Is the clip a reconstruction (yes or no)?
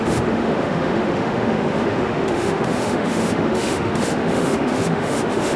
yes